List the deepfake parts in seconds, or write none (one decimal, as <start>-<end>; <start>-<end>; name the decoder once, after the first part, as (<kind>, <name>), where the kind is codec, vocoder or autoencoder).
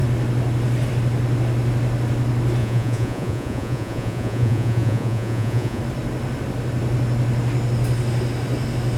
2.6-5.8 (vocoder, Vocos)